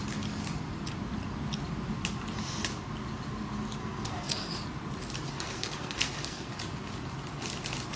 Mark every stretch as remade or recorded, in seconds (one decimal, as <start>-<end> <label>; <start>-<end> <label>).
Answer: 0.0-3.8 recorded; 3.8-4.5 remade; 4.5-5.3 recorded; 5.3-6.5 remade; 6.5-8.0 recorded